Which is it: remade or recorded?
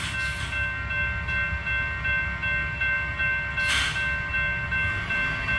recorded